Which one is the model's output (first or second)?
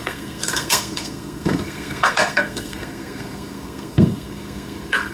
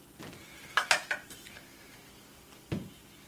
first